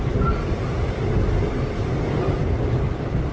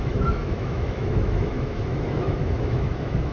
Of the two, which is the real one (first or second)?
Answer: first